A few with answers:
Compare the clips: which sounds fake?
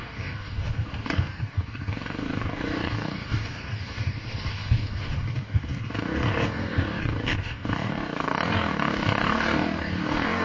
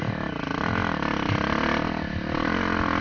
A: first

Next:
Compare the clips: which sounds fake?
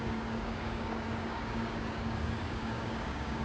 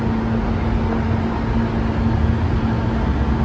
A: first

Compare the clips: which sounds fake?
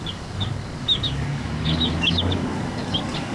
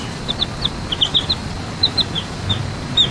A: first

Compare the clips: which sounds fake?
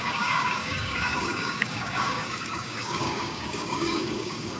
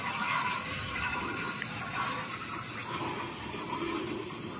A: first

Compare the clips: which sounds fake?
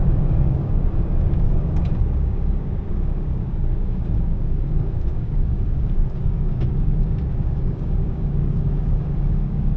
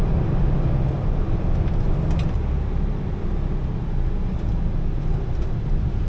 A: first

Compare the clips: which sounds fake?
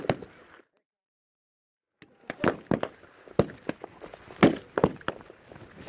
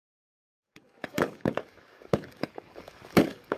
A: second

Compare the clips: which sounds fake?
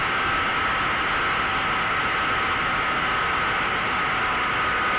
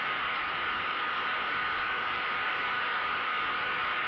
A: second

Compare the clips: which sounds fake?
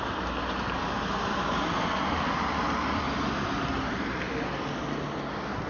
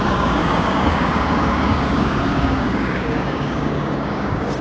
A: second